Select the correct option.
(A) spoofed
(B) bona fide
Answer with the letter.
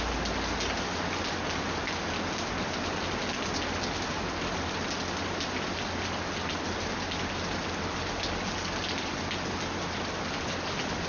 B